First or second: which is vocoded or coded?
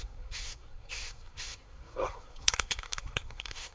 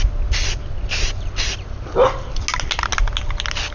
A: first